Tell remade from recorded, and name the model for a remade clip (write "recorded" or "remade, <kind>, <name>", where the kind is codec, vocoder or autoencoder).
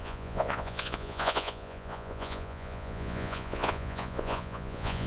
remade, vocoder, Vocos